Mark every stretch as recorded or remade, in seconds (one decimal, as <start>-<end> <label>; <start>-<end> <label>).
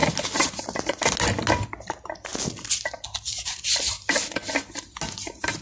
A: 0.0-5.6 recorded